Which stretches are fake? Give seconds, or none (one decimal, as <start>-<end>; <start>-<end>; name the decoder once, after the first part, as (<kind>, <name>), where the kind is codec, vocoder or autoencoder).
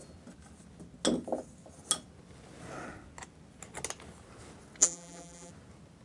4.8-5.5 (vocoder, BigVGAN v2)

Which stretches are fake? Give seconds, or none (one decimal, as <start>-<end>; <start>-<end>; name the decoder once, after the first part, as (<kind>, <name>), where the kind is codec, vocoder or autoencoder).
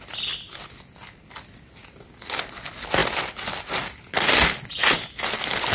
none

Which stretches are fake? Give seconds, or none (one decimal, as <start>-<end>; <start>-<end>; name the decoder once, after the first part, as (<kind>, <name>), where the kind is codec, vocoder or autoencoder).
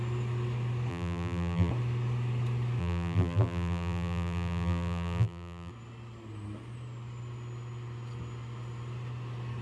0.9-1.7 (vocoder, BigVGAN v2); 2.8-5.7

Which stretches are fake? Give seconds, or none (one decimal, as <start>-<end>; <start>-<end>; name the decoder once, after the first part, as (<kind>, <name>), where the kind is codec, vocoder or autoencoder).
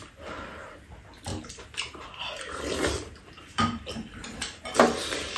none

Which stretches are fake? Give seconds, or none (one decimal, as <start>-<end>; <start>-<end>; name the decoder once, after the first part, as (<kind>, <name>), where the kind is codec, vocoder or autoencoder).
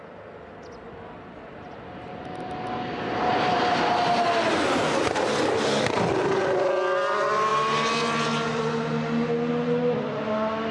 none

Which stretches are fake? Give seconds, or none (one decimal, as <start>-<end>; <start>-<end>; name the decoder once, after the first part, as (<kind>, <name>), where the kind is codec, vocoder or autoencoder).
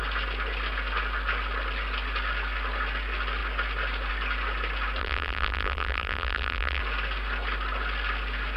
5.0-6.8 (vocoder, BigVGAN v2)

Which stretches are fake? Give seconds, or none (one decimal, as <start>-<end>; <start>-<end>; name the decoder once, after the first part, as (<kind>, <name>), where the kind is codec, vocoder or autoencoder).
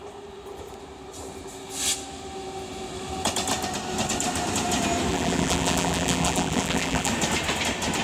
5.1-7.1 (vocoder, BigVGAN v2)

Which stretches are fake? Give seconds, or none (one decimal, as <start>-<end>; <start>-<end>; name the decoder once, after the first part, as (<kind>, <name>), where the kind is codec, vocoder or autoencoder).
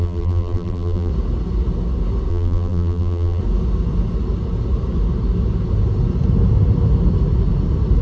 0.0-1.1 (vocoder, BigVGAN v2); 2.3-3.4